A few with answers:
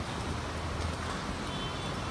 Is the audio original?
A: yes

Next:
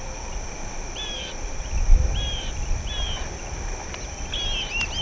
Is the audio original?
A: no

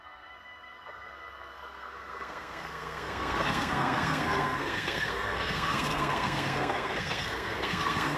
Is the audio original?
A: no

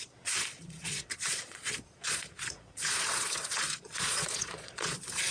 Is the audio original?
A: no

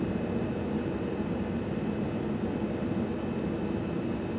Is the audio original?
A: yes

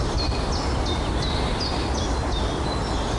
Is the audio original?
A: yes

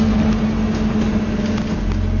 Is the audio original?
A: yes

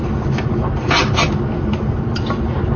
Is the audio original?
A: yes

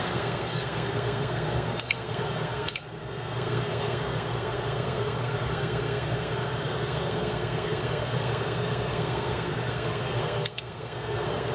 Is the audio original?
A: no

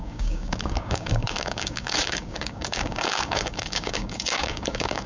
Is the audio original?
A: no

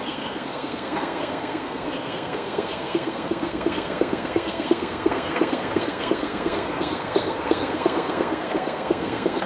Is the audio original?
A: no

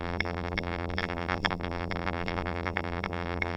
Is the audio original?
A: no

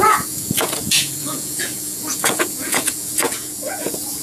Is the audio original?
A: no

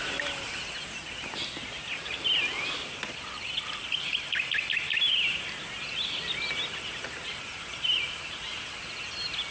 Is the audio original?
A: yes